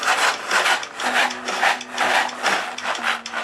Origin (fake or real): real